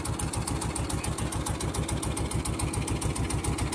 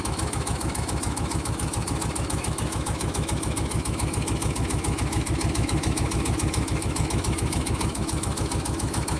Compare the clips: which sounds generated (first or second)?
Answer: second